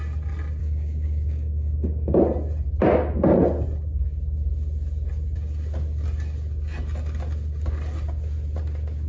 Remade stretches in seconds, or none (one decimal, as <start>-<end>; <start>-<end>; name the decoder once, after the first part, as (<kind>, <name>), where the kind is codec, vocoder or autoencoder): 0.6-2.2 (codec, DAC)